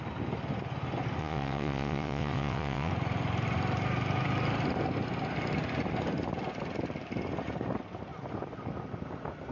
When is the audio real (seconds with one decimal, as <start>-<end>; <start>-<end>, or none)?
0.0-1.2; 2.9-9.5